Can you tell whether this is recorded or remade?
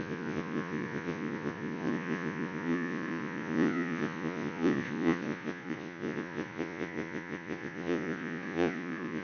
remade